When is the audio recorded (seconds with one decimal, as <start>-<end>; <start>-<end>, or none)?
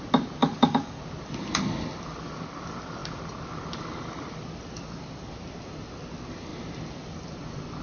0.0-0.4; 1.0-7.8